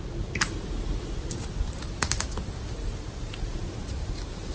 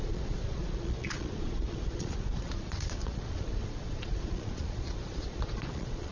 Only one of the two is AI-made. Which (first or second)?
second